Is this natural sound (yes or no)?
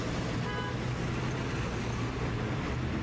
yes